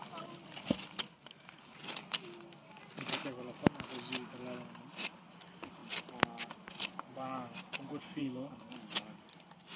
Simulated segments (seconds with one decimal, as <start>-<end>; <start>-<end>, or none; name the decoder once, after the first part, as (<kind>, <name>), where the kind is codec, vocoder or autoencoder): 8.2-8.7 (codec, SNAC)